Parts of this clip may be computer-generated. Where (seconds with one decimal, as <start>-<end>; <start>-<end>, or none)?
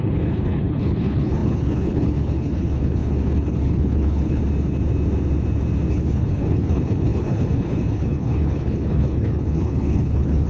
0.0-4.4; 5.9-10.5